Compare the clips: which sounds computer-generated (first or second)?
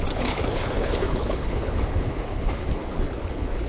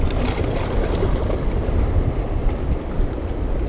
first